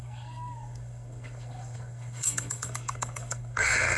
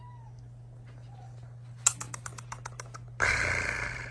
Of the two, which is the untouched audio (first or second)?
second